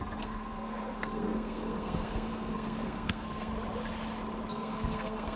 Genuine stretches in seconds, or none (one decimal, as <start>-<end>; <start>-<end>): 3.5-4.5